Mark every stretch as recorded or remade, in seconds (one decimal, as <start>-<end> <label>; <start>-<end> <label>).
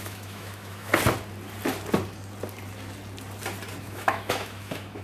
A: 0.0-0.9 remade; 0.9-3.8 recorded; 3.8-5.0 remade